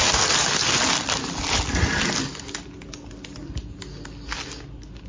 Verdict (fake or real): real